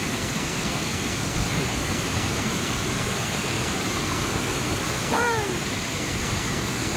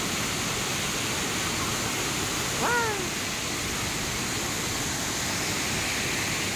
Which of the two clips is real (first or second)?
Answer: second